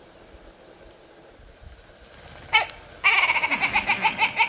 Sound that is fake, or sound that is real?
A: real